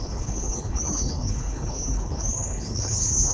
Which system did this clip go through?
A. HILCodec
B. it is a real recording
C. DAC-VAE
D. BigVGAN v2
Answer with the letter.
A